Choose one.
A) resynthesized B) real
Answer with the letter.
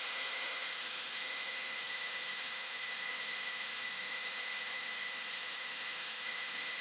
A